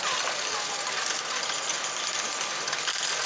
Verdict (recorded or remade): recorded